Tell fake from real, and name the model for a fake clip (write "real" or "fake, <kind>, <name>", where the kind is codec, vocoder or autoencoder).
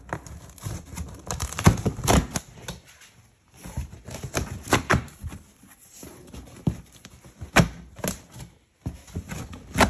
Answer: real